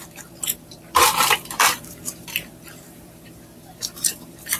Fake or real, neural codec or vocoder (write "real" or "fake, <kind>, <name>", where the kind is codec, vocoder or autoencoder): fake, vocoder, BigVGAN v2